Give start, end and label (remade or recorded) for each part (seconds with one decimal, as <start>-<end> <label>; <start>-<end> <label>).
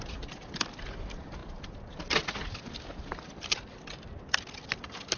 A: 0.0-5.2 recorded